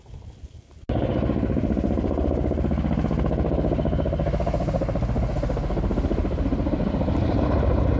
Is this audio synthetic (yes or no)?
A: no